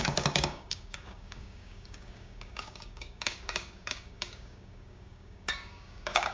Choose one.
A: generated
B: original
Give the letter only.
A